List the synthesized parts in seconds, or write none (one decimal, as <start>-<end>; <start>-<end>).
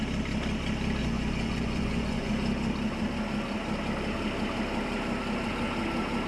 1.0-2.3